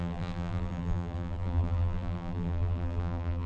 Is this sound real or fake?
fake